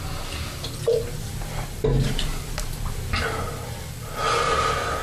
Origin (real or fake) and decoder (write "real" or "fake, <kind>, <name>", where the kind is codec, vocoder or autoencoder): real